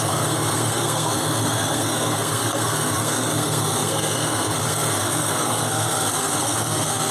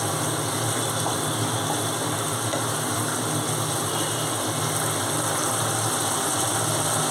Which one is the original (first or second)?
second